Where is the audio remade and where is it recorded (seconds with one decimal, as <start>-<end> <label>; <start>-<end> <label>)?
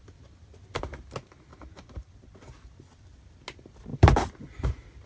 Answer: 0.0-1.5 recorded; 1.5-2.7 remade; 2.7-3.9 recorded; 3.9-5.1 remade